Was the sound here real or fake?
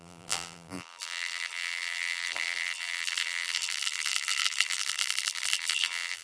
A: fake